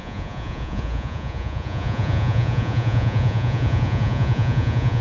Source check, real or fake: fake